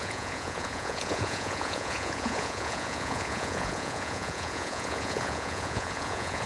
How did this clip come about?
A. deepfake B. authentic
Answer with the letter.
A